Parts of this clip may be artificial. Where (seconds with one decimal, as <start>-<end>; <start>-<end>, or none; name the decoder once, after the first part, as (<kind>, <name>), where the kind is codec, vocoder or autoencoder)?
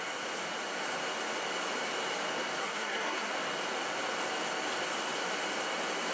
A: 2.6-3.3 (codec, SNAC)